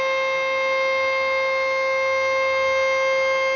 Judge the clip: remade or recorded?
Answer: recorded